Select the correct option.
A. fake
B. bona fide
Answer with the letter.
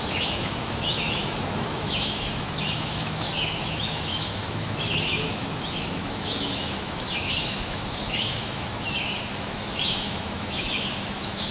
A